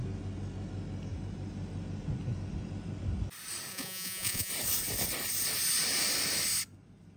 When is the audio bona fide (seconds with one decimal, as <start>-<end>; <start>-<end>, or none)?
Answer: 0.0-3.7; 4.5-7.2